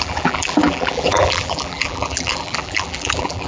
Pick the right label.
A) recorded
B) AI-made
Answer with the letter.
B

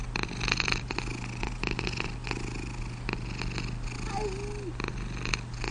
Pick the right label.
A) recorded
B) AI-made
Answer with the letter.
A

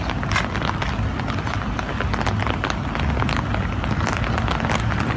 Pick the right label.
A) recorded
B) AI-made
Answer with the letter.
A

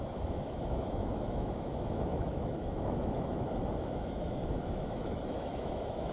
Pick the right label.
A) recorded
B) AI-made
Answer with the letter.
B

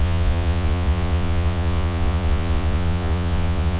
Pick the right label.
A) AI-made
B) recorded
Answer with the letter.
A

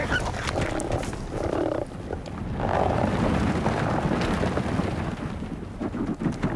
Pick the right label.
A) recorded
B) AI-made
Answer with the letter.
A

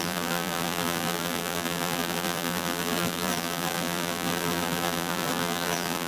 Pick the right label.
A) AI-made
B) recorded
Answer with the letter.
A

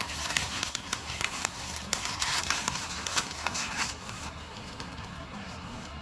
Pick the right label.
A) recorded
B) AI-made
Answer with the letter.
B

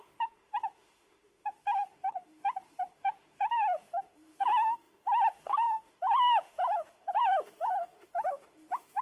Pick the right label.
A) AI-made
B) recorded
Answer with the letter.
A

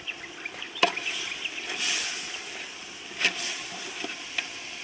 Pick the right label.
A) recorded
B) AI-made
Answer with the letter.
A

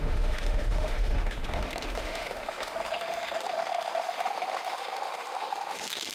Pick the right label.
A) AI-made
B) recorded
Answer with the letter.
A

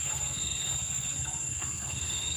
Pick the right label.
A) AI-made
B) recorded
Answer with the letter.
A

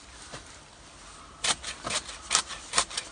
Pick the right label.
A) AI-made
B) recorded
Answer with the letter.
B